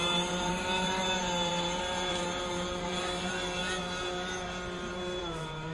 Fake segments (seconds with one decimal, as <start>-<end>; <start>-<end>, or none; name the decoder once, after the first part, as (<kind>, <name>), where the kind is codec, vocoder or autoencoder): 0.0-3.6 (vocoder, BigVGAN v2); 5.2-5.7